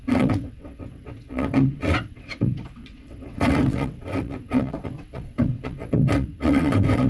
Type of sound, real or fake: fake